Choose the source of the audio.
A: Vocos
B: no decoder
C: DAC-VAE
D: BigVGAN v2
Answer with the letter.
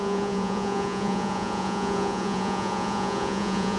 A